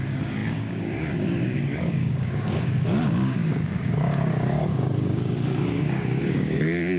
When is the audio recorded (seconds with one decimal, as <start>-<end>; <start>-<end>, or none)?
none